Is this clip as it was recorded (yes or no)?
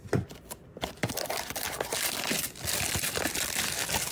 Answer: yes